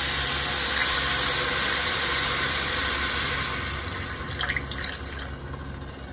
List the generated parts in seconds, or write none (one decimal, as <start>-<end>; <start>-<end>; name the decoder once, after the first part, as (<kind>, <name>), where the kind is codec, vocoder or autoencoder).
0.8-4.5 (vocoder, BigVGAN v2)